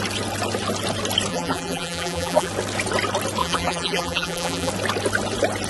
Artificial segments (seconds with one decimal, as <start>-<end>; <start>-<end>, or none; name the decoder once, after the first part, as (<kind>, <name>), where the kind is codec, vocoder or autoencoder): 1.3-2.5 (vocoder, BigVGAN v2); 3.4-4.7